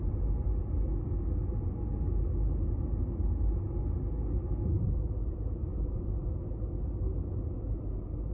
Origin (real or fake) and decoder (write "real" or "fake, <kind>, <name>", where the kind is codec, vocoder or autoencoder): real